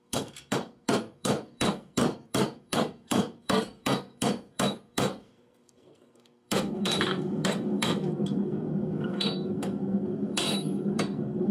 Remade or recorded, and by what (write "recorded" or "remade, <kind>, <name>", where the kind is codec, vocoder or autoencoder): remade, codec, SNAC